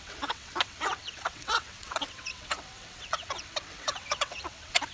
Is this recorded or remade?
remade